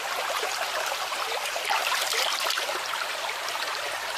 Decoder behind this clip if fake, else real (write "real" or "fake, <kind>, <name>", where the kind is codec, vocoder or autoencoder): real